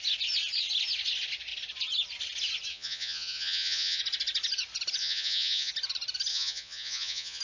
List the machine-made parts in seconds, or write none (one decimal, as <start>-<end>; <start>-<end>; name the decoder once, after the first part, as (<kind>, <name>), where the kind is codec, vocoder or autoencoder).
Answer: 2.7-4.0 (vocoder, Vocos); 5.0-5.7; 6.3-7.4